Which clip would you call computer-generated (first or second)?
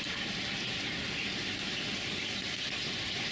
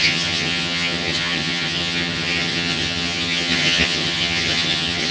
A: second